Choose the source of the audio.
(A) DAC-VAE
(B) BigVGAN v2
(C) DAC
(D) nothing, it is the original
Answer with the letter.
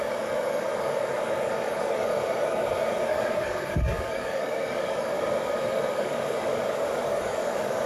C